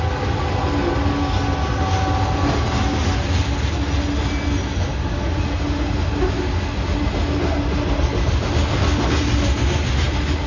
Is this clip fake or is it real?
real